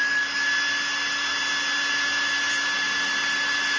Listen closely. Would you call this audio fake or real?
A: real